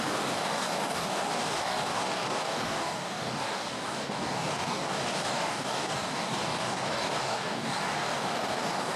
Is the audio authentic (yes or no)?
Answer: no